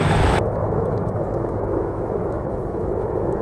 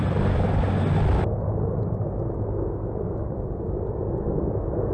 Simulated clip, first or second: first